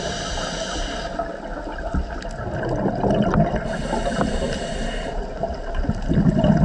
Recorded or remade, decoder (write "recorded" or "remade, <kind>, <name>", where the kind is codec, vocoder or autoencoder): recorded